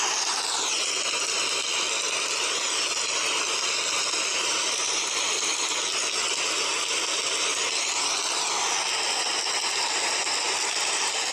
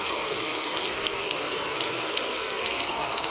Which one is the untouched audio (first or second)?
first